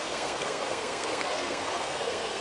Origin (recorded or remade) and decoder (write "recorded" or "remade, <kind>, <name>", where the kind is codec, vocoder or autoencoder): remade, codec, SNAC